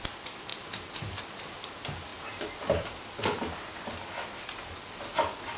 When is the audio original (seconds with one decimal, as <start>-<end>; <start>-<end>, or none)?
0.0-5.6